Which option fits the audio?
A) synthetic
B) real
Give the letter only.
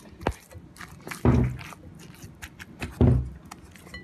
B